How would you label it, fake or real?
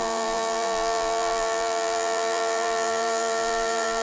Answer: fake